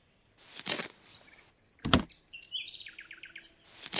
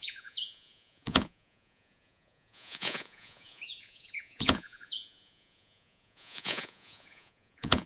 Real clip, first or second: first